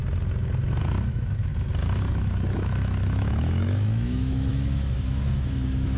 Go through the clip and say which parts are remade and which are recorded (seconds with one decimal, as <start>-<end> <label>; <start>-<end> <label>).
0.0-1.1 recorded; 1.1-1.5 remade; 1.5-2.1 recorded; 2.1-6.0 remade